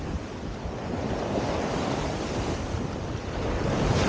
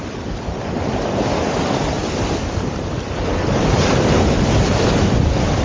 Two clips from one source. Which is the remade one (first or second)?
second